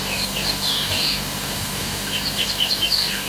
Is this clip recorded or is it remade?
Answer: remade